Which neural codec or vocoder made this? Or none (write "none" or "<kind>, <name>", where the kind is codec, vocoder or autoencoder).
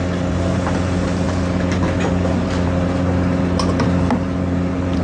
none